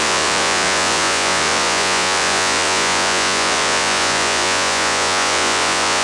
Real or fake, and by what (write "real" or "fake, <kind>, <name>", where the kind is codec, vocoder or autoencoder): fake, vocoder, Vocos